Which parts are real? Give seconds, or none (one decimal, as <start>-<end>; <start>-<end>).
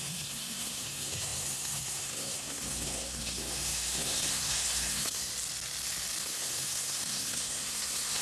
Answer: 5.3-6.2